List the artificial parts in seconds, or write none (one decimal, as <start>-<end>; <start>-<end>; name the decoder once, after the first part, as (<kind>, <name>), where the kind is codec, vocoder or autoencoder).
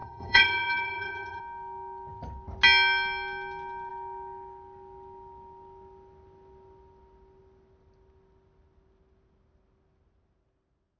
0.0-1.4 (vocoder, HiFi-GAN)